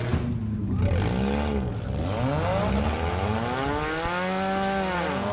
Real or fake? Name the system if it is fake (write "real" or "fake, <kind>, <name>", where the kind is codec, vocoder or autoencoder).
real